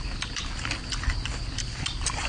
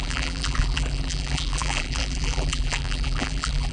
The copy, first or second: second